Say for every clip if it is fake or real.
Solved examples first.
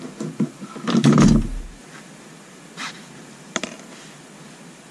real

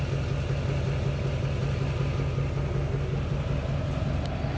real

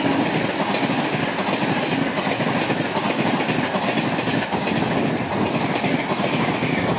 real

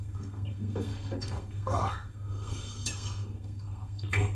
fake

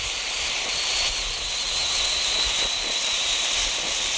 real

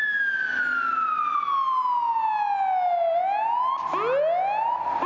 real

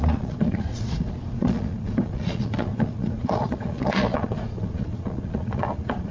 fake